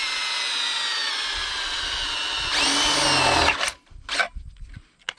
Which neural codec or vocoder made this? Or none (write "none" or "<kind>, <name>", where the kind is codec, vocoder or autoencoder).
none